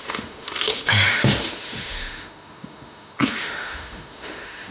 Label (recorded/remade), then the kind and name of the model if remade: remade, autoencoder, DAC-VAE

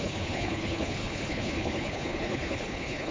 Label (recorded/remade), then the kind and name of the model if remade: remade, codec, HILCodec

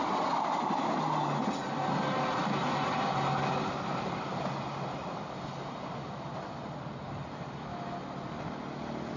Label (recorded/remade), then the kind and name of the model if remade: recorded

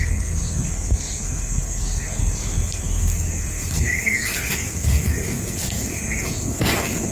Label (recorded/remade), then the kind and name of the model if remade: remade, codec, SNAC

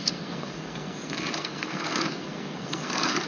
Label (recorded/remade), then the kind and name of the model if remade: remade, codec, SNAC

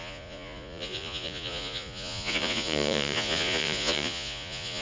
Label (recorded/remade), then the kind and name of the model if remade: remade, vocoder, Vocos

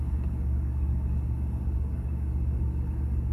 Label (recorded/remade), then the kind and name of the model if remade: remade, codec, DAC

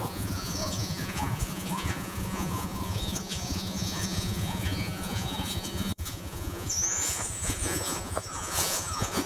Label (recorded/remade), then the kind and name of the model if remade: remade, vocoder, Vocos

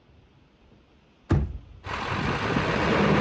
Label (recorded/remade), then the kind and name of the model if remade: recorded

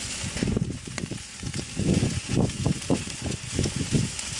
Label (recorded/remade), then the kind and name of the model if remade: remade, vocoder, Vocos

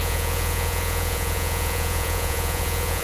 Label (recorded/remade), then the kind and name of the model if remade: remade, vocoder, Vocos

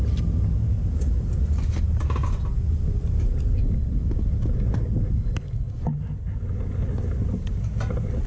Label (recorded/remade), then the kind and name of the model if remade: recorded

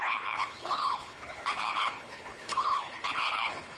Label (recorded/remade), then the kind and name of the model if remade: remade, codec, HILCodec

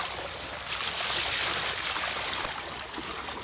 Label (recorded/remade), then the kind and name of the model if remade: recorded